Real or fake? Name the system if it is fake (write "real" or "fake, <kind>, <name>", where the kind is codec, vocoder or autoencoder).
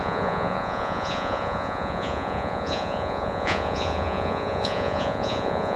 fake, vocoder, Vocos